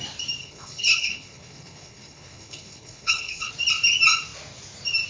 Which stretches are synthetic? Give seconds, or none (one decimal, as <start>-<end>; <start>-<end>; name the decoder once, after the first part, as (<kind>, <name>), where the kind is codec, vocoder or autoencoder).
0.4-3.5 (codec, HILCodec)